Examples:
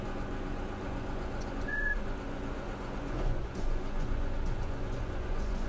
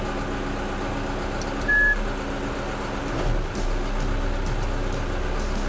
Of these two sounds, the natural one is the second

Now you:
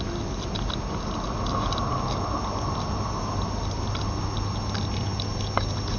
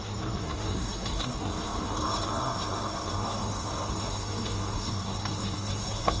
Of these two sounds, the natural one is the first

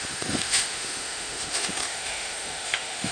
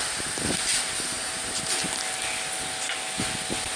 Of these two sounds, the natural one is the second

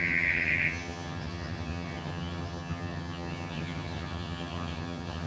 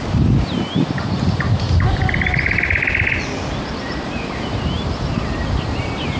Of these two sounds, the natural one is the second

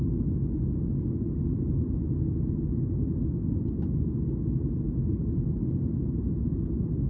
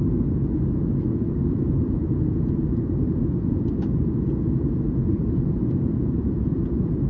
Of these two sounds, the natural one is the first